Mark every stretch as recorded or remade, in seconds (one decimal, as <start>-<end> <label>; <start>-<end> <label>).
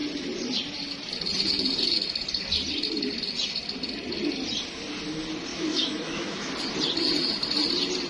0.0-5.5 recorded; 5.5-6.5 remade; 6.5-8.1 recorded